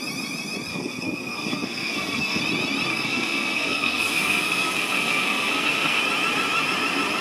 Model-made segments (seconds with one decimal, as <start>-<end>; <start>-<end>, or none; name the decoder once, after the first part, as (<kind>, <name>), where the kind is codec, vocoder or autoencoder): 0.7-2.4 (codec, SNAC); 2.9-6.0